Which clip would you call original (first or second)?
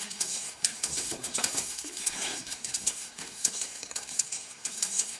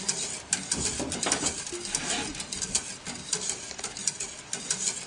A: second